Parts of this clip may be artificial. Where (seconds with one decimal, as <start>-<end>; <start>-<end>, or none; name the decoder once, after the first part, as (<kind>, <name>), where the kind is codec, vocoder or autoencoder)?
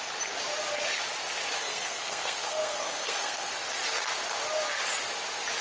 1.6-3.5 (codec, SNAC)